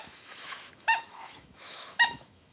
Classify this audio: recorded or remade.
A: remade